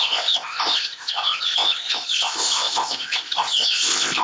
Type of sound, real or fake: fake